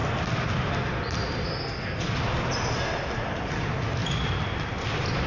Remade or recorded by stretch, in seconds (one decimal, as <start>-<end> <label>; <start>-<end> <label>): 0.0-5.3 recorded